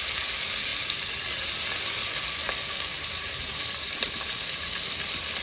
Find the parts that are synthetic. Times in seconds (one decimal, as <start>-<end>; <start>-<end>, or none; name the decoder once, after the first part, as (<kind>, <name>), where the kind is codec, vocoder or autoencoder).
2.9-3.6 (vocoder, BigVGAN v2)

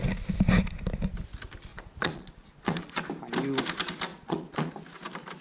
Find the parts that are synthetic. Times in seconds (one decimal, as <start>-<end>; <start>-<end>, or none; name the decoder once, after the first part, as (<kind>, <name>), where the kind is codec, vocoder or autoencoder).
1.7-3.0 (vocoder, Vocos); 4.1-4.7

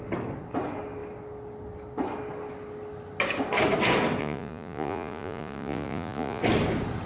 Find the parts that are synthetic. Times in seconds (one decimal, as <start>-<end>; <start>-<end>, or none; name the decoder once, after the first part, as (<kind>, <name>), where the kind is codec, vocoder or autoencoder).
4.2-6.4 (vocoder, Vocos)

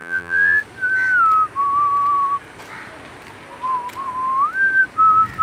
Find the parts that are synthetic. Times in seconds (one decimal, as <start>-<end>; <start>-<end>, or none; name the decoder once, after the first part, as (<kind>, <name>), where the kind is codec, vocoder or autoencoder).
0.0-0.6 (vocoder, BigVGAN v2)